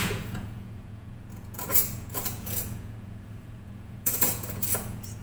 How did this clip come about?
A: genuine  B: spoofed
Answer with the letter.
B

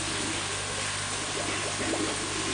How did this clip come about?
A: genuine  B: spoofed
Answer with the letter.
A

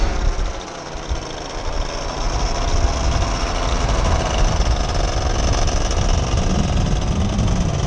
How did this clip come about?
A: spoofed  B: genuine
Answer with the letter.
B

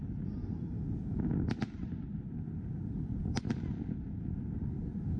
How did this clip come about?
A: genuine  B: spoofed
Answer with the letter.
A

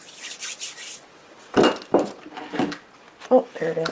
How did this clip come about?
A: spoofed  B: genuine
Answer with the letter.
B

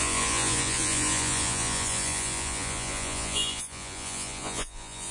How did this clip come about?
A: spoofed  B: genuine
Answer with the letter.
A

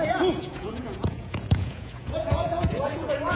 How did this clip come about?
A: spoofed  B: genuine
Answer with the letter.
A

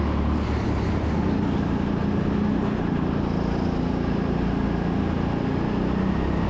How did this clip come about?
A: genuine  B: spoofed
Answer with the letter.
A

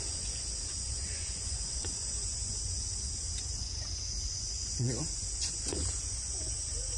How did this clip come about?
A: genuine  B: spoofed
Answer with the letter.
B